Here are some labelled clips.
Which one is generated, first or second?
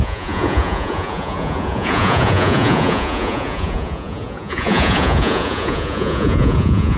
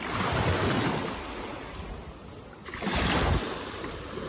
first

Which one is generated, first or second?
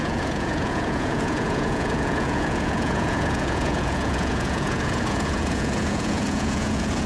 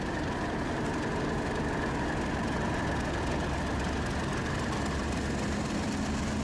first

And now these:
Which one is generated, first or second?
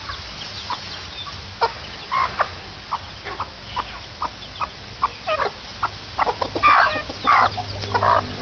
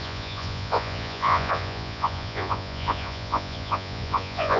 second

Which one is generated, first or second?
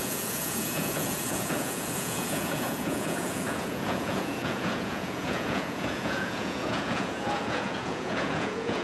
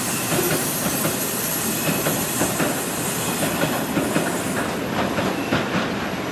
first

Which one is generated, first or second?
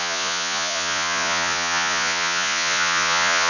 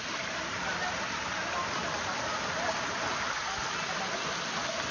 first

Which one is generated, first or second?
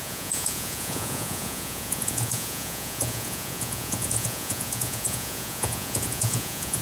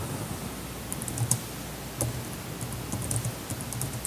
first